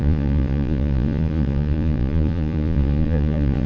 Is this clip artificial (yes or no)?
yes